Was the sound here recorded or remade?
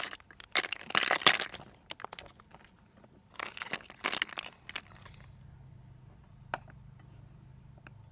recorded